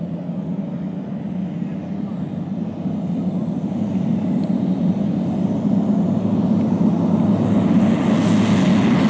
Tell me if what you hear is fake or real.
real